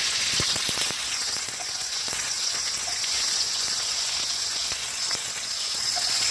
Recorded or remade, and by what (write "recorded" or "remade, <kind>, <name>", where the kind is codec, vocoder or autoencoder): remade, vocoder, Vocos